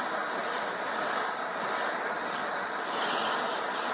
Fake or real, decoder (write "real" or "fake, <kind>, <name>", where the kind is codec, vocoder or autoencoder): fake, vocoder, BigVGAN v2